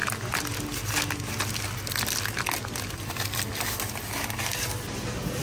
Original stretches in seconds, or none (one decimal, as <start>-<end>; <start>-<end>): 0.0-5.4